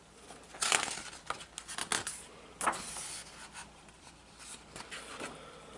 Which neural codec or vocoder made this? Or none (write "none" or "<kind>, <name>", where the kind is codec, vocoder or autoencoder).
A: none